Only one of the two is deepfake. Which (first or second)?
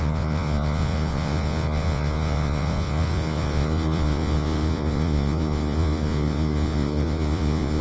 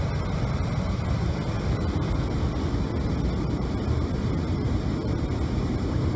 first